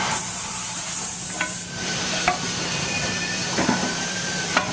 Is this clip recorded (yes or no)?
no